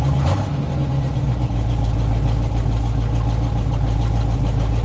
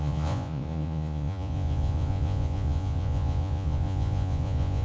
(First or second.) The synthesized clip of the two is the second